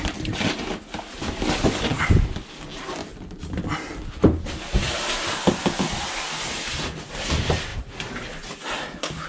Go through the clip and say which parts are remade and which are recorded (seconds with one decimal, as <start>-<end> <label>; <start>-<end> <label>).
0.0-9.3 recorded